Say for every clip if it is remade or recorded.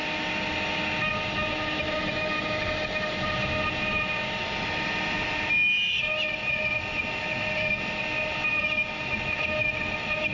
recorded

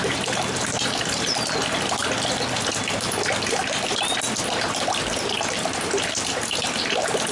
recorded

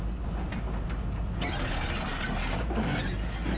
recorded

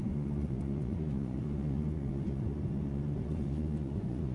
remade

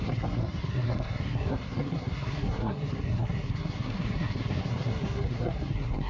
remade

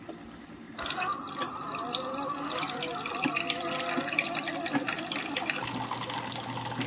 recorded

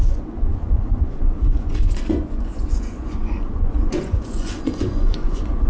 remade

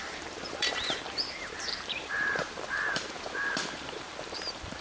remade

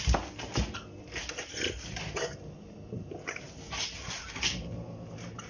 recorded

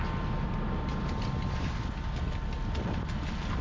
recorded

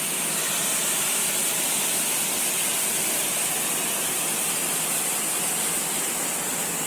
recorded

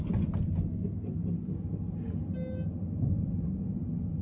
recorded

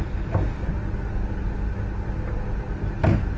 recorded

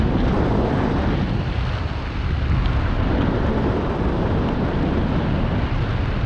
recorded